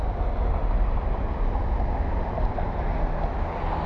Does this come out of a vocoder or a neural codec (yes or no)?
no